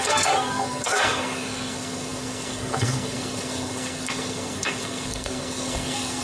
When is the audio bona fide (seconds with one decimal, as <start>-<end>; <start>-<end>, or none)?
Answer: none